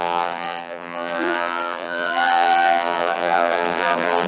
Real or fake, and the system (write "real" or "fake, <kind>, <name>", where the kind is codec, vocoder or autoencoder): fake, vocoder, BigVGAN v2